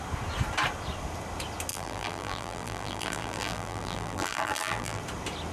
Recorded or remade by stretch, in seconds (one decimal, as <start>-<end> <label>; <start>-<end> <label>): 0.0-1.7 recorded; 1.7-5.0 remade; 5.0-5.5 recorded